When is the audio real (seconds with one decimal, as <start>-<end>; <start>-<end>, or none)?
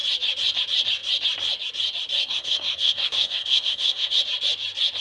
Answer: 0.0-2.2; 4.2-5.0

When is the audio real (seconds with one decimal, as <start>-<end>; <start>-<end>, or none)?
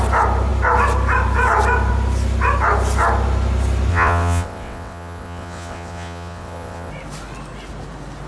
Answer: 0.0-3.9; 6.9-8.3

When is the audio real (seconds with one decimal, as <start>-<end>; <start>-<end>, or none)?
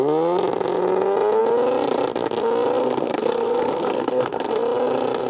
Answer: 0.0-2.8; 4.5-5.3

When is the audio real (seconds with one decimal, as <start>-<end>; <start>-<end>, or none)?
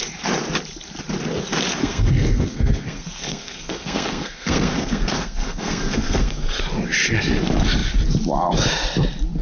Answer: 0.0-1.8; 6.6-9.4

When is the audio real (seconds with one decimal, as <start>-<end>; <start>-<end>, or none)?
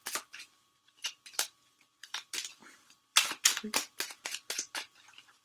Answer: none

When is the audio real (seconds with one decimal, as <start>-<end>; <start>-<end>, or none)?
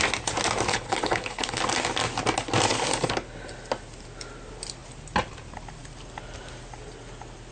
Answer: 0.0-0.7; 1.6-7.5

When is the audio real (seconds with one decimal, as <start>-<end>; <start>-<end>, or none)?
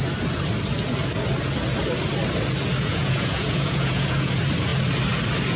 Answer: 0.0-2.9; 4.3-5.6